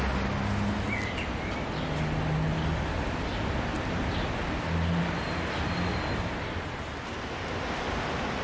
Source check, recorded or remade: recorded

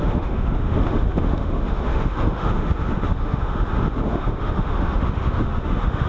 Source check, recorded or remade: remade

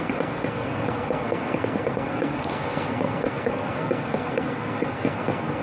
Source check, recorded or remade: remade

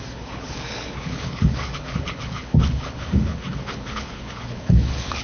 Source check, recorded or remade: remade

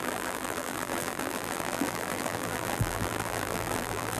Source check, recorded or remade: remade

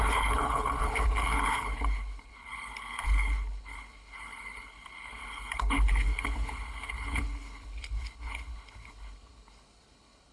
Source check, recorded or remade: remade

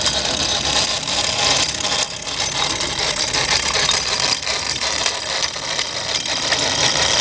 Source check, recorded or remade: recorded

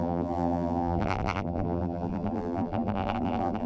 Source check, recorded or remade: remade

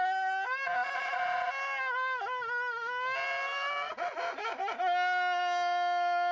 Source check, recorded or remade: recorded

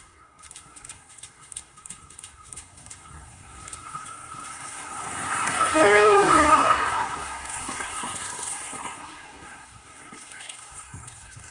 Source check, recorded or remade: remade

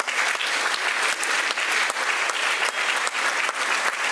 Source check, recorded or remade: recorded